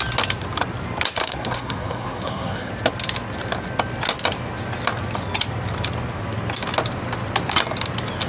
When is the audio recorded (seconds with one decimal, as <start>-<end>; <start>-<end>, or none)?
0.0-1.2; 2.7-8.3